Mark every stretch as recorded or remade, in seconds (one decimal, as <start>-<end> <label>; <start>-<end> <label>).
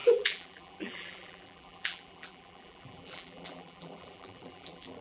0.0-5.0 remade